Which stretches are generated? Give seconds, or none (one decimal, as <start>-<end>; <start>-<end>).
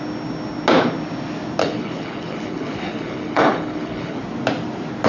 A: 1.6-4.2